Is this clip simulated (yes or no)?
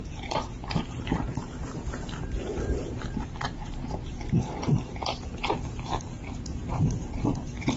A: yes